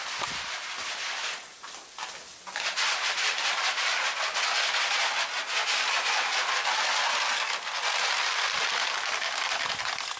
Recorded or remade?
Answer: recorded